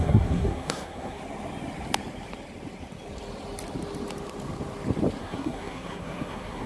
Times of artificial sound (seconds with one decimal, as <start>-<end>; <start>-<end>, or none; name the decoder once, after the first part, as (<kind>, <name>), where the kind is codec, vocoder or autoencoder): 0.0-1.2 (codec, SNAC); 5.2-6.7